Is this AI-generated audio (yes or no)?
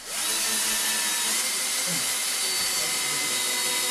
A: no